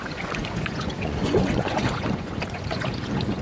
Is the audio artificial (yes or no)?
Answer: yes